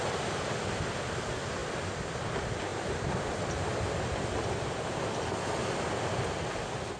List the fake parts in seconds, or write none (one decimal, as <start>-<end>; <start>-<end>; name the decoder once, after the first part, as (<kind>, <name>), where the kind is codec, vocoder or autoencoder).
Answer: none